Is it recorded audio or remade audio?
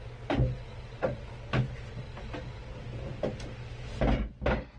recorded